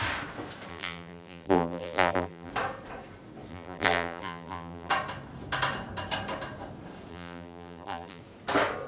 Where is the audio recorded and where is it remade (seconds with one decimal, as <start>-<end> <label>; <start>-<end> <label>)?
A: 0.0-0.7 recorded; 0.7-2.5 remade; 2.5-3.5 recorded; 3.5-4.9 remade; 4.9-7.1 recorded; 7.1-8.2 remade; 8.2-8.9 recorded